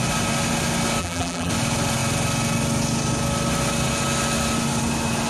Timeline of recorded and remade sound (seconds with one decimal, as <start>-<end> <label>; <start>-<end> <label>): 0.0-1.0 recorded; 1.0-1.5 remade; 1.5-5.3 recorded